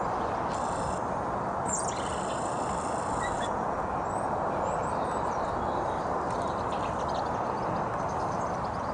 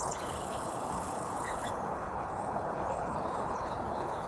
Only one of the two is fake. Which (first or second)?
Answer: second